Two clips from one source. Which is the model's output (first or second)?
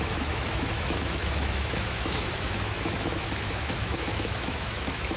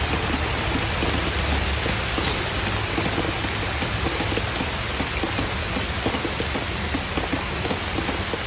first